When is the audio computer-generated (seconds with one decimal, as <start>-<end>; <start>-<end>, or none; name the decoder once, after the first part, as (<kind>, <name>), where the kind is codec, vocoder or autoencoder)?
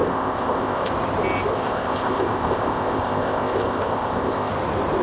0.0-0.9 (codec, ZipCodec); 1.5-4.5